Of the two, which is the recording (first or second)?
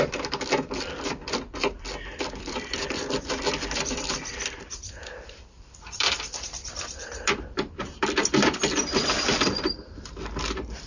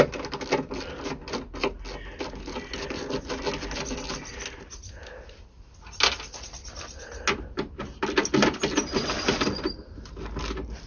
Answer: second